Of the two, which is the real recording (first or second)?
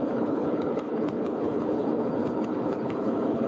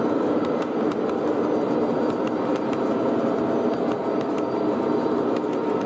second